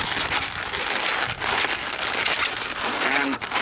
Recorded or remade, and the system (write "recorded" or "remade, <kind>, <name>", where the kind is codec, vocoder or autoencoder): recorded